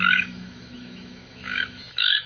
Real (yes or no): no